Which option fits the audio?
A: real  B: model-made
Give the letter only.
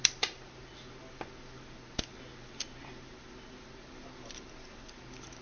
A